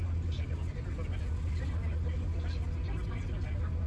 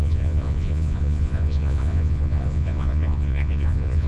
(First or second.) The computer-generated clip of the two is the second